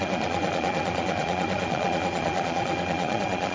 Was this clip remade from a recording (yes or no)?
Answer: yes